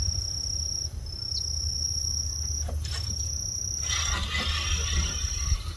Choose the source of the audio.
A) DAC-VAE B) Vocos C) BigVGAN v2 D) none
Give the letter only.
D